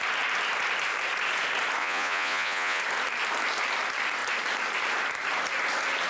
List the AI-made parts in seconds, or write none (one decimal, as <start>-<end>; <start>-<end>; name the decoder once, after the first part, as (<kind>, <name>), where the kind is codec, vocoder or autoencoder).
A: 1.8-2.8 (vocoder, Vocos)